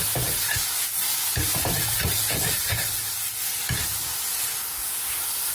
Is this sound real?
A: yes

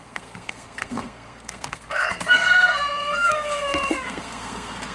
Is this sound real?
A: no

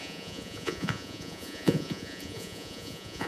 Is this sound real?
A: no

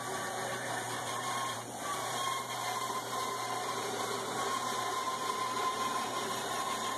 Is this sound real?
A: no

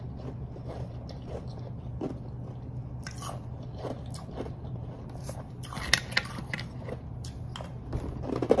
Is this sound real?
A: yes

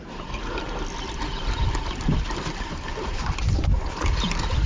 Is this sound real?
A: no